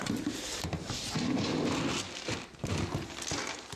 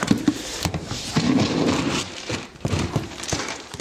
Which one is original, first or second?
first